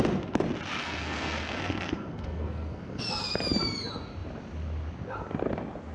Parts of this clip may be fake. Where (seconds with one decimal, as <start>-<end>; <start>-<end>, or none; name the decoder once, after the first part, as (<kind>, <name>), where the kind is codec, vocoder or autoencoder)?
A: 0.8-3.0 (codec, SNAC)